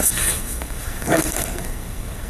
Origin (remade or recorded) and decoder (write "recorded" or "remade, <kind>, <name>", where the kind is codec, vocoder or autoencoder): remade, codec, SNAC